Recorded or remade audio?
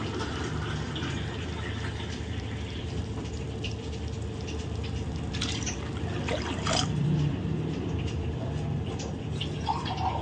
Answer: remade